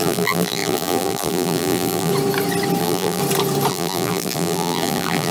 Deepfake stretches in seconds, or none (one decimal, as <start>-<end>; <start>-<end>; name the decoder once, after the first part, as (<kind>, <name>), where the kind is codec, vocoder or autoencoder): 0.0-2.1 (vocoder, BigVGAN v2); 2.8-3.2; 3.7-5.3